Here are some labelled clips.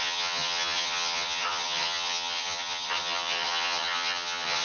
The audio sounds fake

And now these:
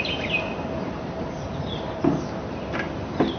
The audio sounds real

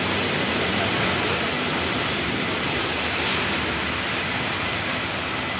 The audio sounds real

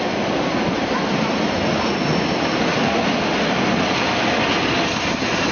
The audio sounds real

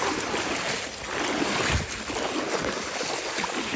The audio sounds real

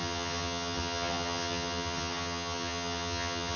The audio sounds fake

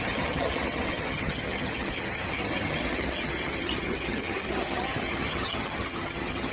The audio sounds fake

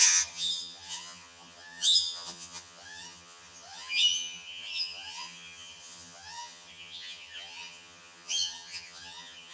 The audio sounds fake